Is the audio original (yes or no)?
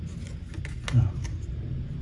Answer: yes